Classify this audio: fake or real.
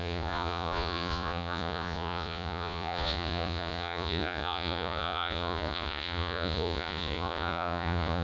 fake